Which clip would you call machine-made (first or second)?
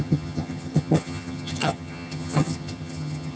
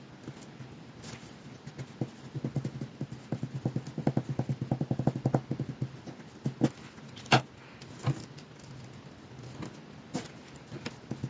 first